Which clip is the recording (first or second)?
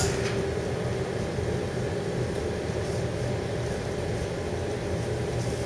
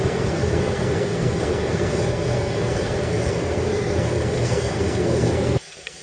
first